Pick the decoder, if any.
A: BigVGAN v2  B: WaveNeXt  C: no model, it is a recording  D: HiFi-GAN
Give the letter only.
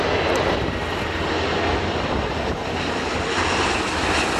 C